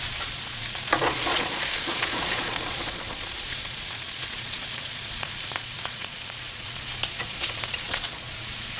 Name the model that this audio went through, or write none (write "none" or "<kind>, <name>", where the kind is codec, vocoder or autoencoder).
vocoder, Vocos